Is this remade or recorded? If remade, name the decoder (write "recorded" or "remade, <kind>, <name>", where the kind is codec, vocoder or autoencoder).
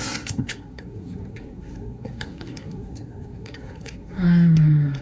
remade, codec, SNAC